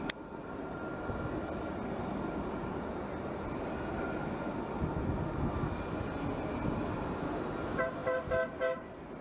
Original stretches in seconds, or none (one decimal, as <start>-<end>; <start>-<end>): 0.0-9.2